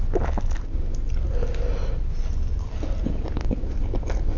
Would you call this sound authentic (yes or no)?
yes